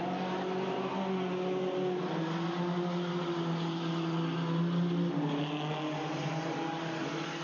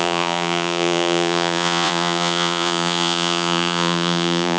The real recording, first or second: first